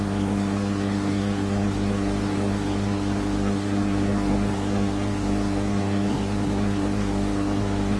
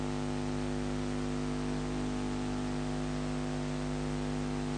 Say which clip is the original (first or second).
second